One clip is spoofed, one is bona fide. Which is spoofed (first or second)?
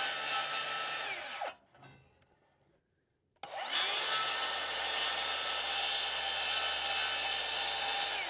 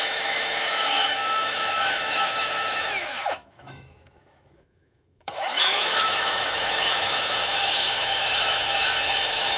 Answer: second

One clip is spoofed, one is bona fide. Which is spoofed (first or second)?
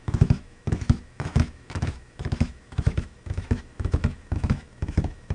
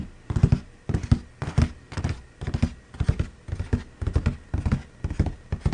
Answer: first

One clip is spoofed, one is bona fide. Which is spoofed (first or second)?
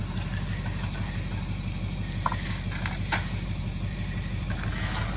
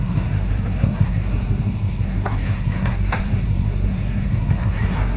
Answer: second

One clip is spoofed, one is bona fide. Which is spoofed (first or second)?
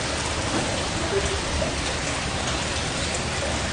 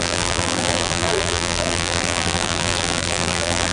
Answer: second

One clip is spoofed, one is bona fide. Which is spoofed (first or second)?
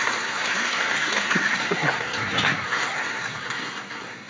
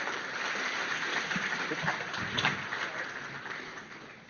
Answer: first